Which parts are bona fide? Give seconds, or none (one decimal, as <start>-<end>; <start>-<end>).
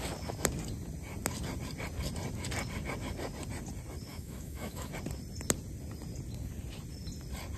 0.0-4.1; 4.9-7.6